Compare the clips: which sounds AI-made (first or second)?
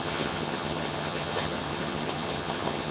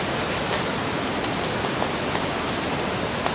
first